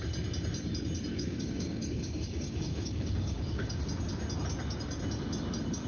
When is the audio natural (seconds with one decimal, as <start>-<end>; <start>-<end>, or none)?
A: 0.0-1.1; 3.8-5.9